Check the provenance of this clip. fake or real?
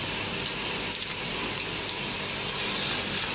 real